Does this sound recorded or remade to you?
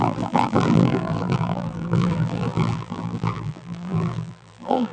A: remade